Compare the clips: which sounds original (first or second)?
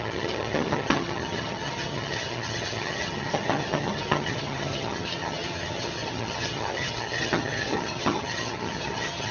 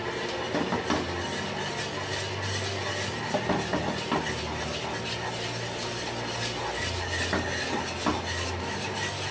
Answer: second